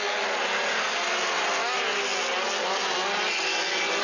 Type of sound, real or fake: real